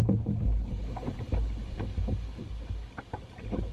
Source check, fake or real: real